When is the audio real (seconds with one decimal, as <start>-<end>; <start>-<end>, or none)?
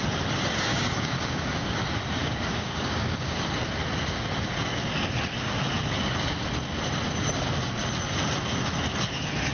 0.0-0.7; 1.8-2.2; 3.4-9.5